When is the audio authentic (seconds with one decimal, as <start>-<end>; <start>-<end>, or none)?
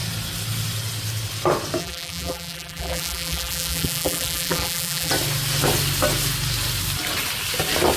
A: 0.0-1.8; 5.1-8.0